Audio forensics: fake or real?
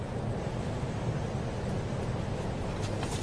real